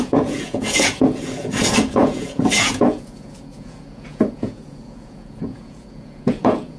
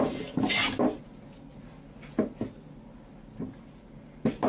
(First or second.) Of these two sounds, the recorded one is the second